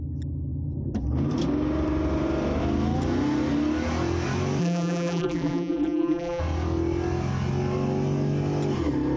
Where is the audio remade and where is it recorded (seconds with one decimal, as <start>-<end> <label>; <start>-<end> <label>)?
0.0-4.6 recorded; 4.6-6.4 remade; 6.4-9.2 recorded

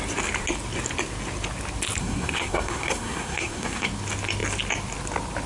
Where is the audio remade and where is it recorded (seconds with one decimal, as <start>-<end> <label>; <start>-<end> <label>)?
0.0-2.0 recorded; 2.0-3.9 remade; 3.9-5.5 recorded

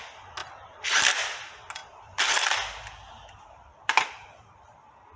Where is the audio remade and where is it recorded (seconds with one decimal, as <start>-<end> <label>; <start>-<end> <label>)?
0.0-0.4 recorded; 0.4-1.1 remade; 1.1-1.8 recorded; 1.8-5.2 remade